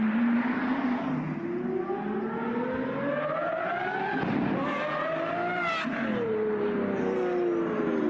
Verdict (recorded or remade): recorded